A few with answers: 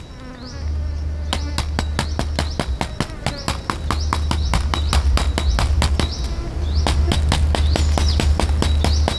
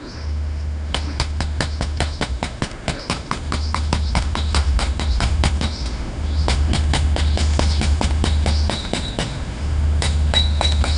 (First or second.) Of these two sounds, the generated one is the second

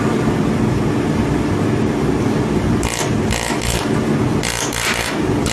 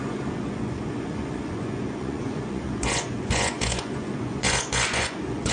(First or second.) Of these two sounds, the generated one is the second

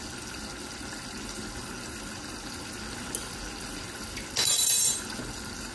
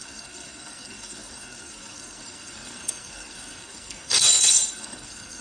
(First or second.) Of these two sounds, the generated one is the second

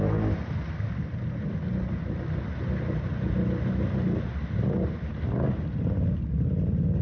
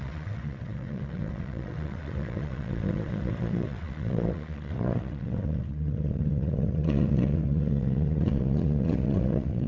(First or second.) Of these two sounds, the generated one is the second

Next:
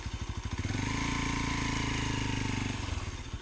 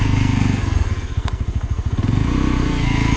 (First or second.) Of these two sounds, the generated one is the second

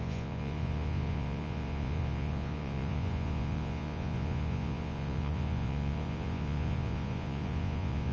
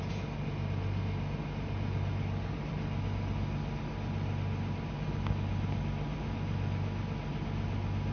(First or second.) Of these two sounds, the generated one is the first